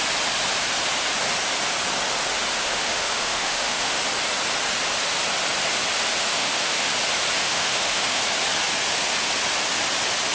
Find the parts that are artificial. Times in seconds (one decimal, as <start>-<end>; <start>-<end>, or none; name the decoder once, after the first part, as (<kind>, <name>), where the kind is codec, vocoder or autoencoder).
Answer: 2.6-4.0 (autoencoder, DAC-VAE); 6.3-6.9; 7.4-8.2